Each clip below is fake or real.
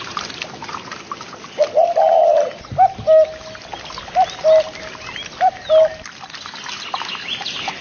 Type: real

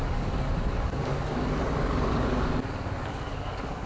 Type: fake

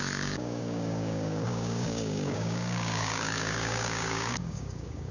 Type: fake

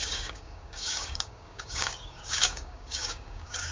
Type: fake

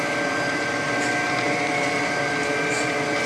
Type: real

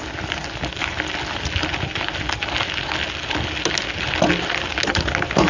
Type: real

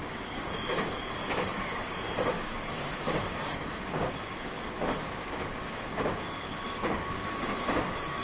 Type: fake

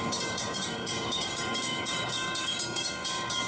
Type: fake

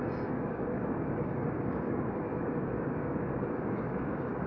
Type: fake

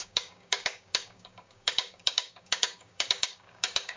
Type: fake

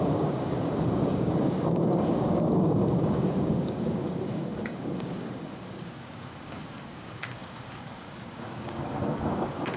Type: fake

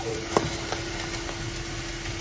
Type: real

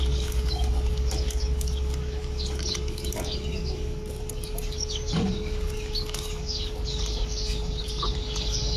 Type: fake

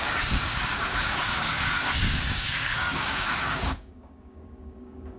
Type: fake